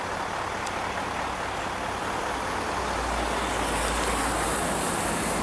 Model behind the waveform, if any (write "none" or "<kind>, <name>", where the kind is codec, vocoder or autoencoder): none